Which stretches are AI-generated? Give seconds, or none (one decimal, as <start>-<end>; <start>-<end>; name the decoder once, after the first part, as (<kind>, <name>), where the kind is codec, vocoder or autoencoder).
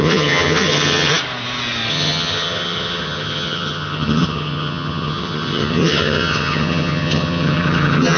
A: 0.0-1.1 (vocoder, HiFi-GAN); 1.9-8.2